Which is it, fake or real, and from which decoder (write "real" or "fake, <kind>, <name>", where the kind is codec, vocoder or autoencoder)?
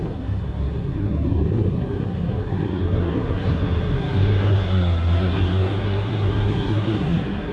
fake, codec, SNAC